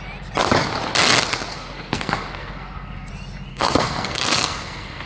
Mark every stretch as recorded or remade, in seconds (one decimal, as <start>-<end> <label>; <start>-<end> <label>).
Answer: 0.0-1.5 recorded; 1.5-3.1 remade; 3.1-3.5 recorded; 3.5-5.1 remade